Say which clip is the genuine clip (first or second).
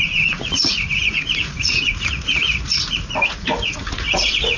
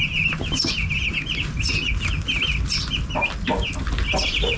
second